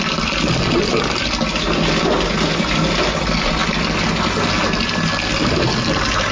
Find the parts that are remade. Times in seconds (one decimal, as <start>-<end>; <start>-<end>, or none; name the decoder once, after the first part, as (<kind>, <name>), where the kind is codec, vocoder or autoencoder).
none